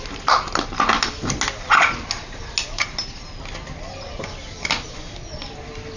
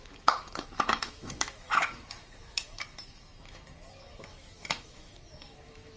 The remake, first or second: second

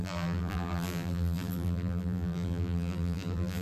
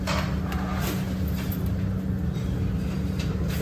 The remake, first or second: first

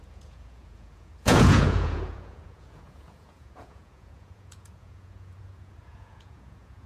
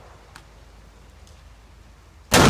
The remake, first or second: first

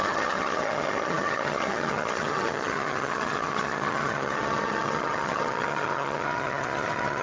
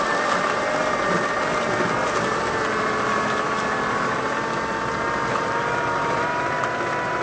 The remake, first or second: first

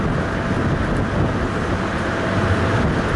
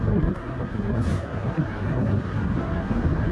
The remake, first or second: second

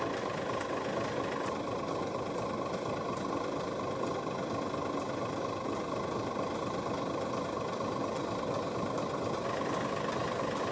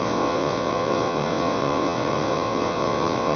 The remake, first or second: second